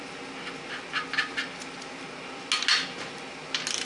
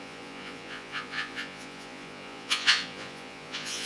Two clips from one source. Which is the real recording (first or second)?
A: first